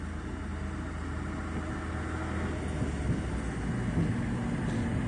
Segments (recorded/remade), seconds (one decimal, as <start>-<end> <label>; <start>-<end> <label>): 0.0-5.1 recorded